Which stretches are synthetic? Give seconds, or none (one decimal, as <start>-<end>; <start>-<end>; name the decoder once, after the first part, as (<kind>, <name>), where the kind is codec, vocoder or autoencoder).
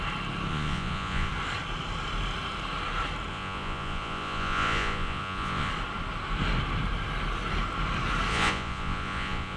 0.5-1.3 (vocoder, Vocos); 3.3-5.7; 8.3-9.6